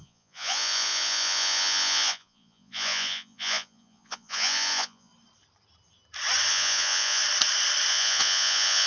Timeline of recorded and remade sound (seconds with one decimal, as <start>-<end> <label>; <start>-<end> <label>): 0.0-5.1 remade; 5.1-6.5 recorded; 6.5-7.2 remade; 7.2-7.9 recorded; 7.9-8.9 remade